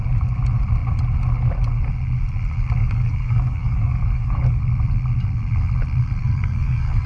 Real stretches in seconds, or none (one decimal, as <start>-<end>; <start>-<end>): 0.0-2.8; 4.6-6.2